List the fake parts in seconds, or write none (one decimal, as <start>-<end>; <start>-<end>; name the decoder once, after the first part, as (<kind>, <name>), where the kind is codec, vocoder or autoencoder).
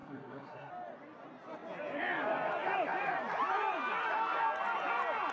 0.0-0.7 (codec, SNAC)